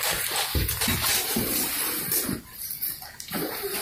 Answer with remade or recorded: recorded